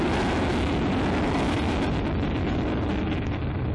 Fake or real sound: real